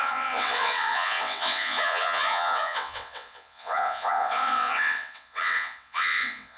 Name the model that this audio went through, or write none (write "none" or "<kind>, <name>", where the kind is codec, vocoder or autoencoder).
vocoder, WaveNeXt